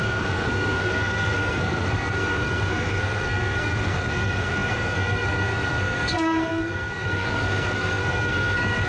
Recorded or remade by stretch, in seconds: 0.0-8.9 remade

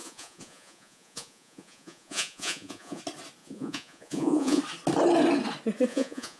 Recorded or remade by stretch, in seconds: 0.0-3.0 remade; 3.0-3.4 recorded; 3.4-4.6 remade; 4.6-5.9 recorded; 5.9-6.4 remade

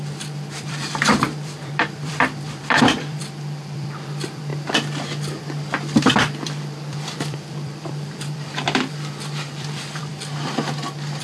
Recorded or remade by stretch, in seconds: 0.0-4.5 remade; 4.5-6.1 recorded; 6.1-10.1 remade; 10.1-11.2 recorded